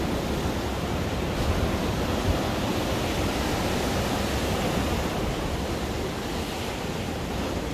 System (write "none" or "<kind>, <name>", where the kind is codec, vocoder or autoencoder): none